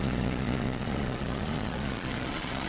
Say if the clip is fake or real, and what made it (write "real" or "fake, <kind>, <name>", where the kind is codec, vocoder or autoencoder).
fake, vocoder, Vocos